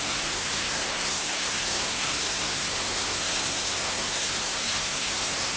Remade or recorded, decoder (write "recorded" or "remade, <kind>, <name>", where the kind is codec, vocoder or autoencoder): remade, codec, SNAC